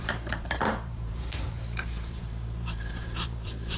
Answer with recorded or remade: remade